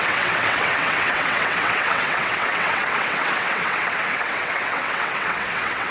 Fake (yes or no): yes